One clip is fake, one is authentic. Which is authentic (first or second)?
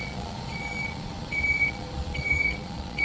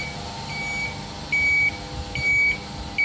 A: second